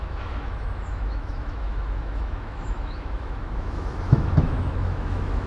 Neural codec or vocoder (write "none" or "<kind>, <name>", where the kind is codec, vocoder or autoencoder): autoencoder, DAC-VAE